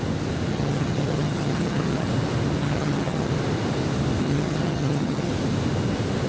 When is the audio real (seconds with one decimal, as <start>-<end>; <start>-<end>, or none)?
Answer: 0.0-0.5; 2.1-2.6; 3.3-4.2; 5.3-6.3